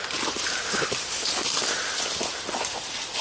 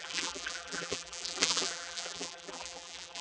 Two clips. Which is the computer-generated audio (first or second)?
second